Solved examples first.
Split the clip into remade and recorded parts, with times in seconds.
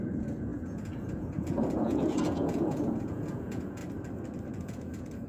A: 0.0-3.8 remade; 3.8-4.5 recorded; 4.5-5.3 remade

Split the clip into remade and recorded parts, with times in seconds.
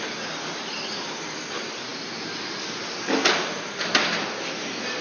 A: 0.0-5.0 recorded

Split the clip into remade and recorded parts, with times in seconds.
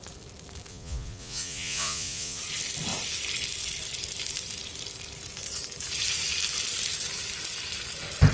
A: 0.0-0.7 recorded; 0.7-2.4 remade; 2.4-8.3 recorded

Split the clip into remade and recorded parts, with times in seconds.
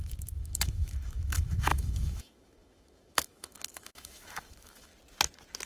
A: 0.0-4.9 remade; 4.9-5.7 recorded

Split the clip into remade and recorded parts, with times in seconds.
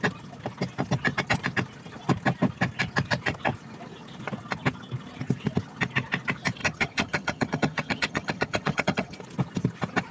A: 0.0-6.6 recorded; 6.6-9.2 remade; 9.2-10.1 recorded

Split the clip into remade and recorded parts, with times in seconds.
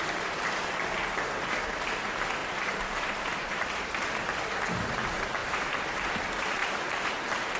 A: 0.0-2.4 recorded; 2.4-3.5 remade; 3.5-5.4 recorded; 5.4-6.1 remade; 6.1-6.6 recorded; 6.6-7.1 remade; 7.1-7.6 recorded